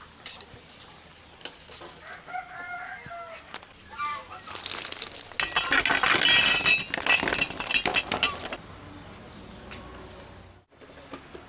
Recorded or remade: recorded